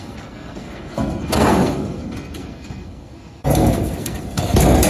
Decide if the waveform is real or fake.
fake